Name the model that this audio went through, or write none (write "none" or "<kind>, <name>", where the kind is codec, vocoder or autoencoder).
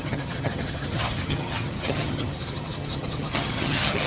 vocoder, HiFi-GAN